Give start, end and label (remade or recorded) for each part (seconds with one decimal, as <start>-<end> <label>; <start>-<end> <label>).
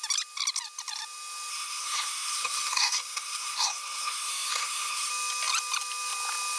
0.0-1.5 recorded; 1.5-5.1 remade; 5.1-6.6 recorded